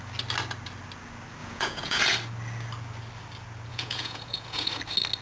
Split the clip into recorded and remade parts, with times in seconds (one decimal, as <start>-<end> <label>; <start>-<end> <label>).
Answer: 0.0-1.4 recorded; 1.4-2.0 remade; 2.0-3.7 recorded; 3.7-4.8 remade; 4.8-5.2 recorded